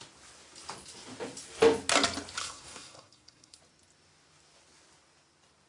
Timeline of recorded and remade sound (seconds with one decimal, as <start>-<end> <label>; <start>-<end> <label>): 0.0-2.4 recorded; 2.4-3.6 remade; 3.6-5.7 recorded